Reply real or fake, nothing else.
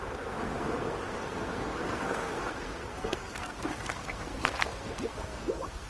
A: fake